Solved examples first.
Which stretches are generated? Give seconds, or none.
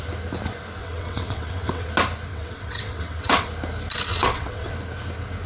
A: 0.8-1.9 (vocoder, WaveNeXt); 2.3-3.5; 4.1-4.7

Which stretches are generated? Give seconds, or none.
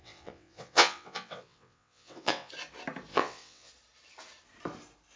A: 0.0-2.5 (vocoder, WaveNeXt); 3.1-3.7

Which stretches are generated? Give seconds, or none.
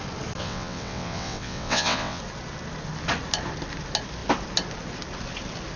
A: 0.4-2.2 (vocoder, WaveNeXt)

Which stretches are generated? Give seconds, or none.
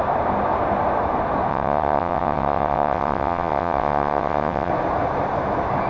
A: 1.5-4.7 (vocoder, WaveNeXt)